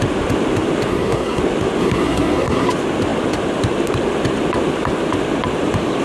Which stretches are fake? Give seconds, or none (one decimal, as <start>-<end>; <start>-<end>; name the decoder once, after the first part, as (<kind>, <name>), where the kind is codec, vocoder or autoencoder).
0.9-1.4 (codec, SNAC); 1.8-2.7